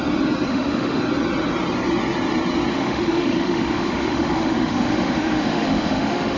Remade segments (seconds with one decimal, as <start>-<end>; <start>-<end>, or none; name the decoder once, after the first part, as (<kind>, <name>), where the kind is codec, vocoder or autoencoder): 0.5-1.0 (autoencoder, DAC-VAE); 2.7-6.4